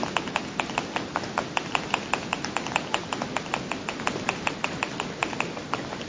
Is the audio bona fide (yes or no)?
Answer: yes